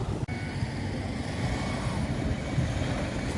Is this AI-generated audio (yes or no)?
no